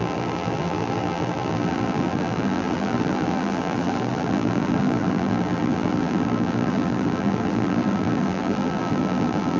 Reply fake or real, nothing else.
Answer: fake